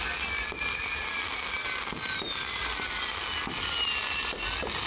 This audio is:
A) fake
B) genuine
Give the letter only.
B